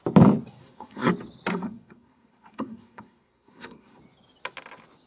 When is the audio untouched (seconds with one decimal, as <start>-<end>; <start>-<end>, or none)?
0.0-0.6; 1.1-1.5; 4.0-5.1